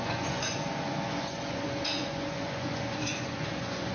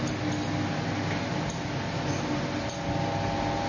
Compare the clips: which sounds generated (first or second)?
first